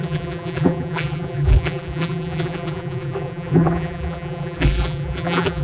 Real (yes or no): no